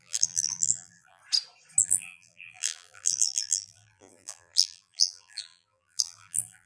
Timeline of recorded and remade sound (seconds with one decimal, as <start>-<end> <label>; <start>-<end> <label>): 0.0-1.2 remade; 1.2-1.8 recorded; 1.8-6.7 remade